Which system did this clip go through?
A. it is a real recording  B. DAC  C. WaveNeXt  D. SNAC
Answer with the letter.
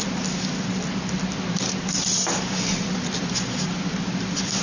A